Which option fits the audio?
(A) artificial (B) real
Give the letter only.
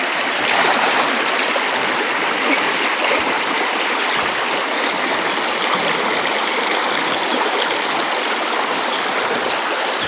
B